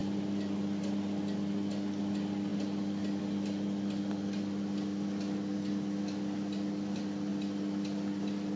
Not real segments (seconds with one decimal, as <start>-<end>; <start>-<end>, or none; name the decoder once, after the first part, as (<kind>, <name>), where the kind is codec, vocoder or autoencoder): none